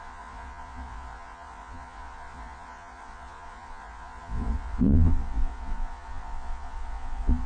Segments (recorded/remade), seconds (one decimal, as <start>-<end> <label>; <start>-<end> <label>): 0.0-7.5 remade